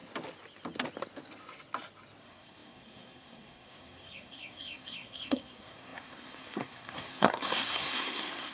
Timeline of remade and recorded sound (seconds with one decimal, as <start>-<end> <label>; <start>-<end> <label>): 0.0-2.2 recorded; 2.2-8.5 remade